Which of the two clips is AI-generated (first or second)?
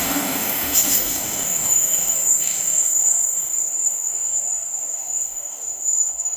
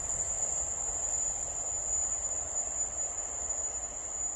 first